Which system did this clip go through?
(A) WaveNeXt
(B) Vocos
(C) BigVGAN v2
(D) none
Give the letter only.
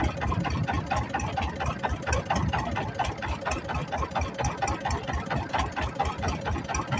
D